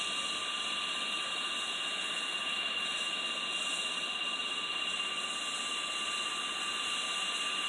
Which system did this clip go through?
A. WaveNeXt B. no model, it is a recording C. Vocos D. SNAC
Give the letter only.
B